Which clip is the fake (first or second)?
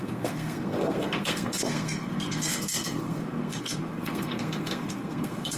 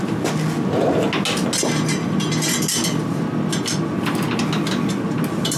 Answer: first